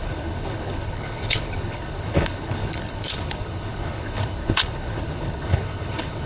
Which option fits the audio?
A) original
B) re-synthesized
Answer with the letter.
B